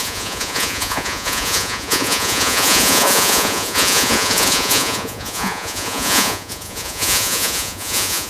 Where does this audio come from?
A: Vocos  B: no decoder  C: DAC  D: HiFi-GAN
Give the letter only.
A